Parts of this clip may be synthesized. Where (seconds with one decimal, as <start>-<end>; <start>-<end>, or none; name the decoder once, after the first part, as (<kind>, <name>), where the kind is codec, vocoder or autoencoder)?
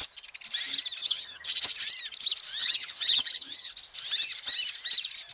1.0-1.6 (vocoder, HiFi-GAN); 2.6-3.7